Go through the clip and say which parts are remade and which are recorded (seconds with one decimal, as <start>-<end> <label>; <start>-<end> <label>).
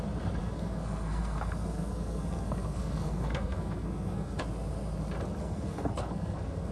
0.0-0.4 recorded; 0.4-4.4 remade; 4.4-5.4 recorded; 5.4-6.7 remade